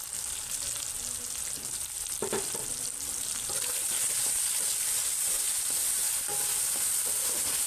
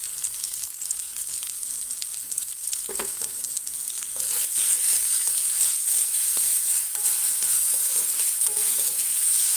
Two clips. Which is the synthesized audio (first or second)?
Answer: second